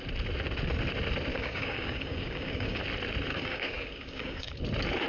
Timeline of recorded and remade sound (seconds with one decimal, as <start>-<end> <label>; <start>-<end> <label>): 0.0-1.3 recorded; 1.3-2.8 remade; 2.8-3.3 recorded; 3.3-4.6 remade; 4.6-5.1 recorded